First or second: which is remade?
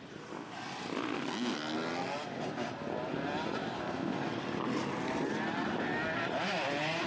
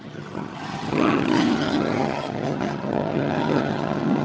second